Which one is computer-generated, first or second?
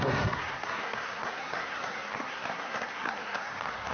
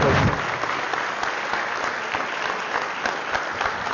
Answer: first